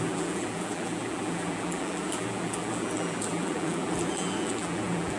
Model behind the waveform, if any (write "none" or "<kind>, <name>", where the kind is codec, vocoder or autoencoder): vocoder, BigVGAN v2